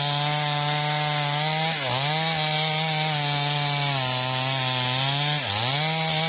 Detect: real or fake real